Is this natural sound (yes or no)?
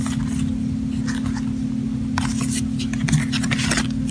yes